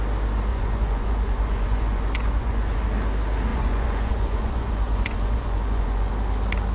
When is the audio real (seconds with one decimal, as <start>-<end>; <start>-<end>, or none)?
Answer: 0.0-0.5; 2.8-3.5; 6.1-6.7